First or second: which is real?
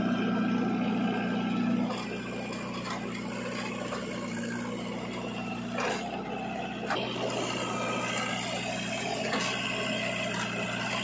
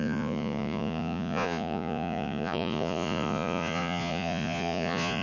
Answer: first